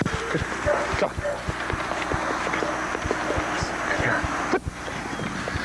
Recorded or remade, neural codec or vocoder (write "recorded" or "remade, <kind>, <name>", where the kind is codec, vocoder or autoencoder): recorded